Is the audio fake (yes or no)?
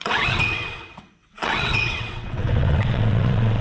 yes